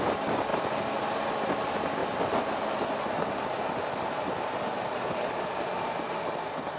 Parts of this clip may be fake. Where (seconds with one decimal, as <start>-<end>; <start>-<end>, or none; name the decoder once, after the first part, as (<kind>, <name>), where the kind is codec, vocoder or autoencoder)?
0.0-0.5 (vocoder, BigVGAN v2); 1.3-6.8